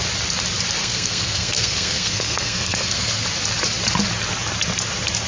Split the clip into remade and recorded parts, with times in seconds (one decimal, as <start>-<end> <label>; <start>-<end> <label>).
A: 0.0-0.8 recorded; 0.8-3.2 remade; 3.2-5.3 recorded